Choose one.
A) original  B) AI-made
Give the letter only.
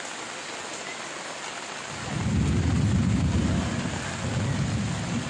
A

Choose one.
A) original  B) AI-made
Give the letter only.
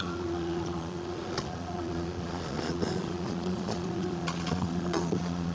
B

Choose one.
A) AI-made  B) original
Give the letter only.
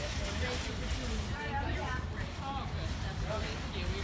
B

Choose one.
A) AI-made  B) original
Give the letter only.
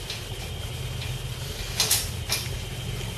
B